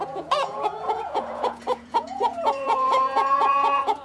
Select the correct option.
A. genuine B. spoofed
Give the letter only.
B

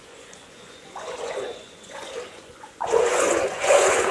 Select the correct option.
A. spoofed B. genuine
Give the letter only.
A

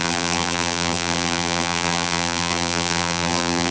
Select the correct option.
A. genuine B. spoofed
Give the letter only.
B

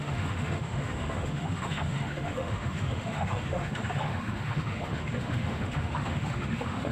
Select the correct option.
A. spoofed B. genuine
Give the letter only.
A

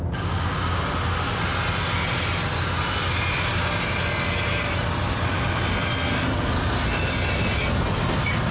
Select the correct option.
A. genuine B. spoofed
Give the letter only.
A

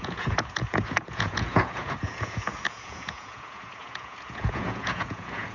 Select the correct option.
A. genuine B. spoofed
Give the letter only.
B